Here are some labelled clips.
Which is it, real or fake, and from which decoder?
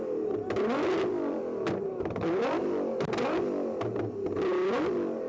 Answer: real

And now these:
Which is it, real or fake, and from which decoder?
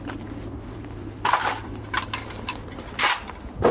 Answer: fake, vocoder, BigVGAN v2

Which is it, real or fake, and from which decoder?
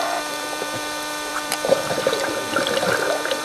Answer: fake, vocoder, BigVGAN v2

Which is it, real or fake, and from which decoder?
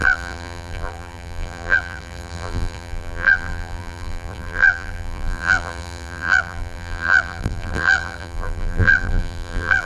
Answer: fake, vocoder, BigVGAN v2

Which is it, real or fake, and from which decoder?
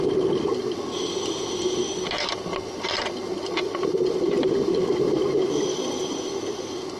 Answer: real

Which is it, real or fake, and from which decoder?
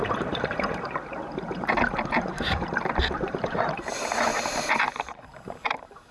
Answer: fake, vocoder, BigVGAN v2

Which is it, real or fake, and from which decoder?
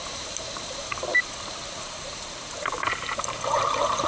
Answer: fake, vocoder, BigVGAN v2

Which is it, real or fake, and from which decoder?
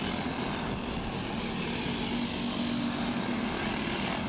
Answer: real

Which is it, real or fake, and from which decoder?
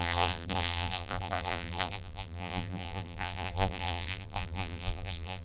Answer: fake, vocoder, BigVGAN v2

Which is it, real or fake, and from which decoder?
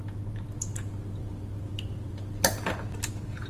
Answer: fake, vocoder, BigVGAN v2